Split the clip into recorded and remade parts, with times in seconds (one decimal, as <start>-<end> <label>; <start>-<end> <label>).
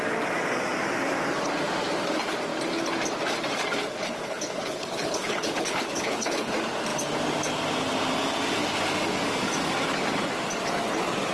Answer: 0.0-3.9 recorded; 3.9-6.5 remade; 6.5-11.3 recorded